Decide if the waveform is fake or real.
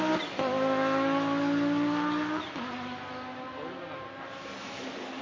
real